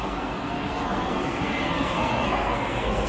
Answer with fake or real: fake